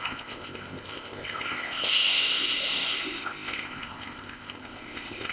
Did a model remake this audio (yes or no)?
yes